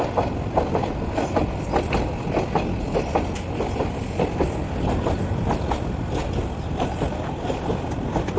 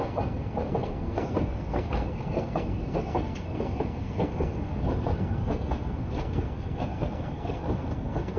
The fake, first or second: second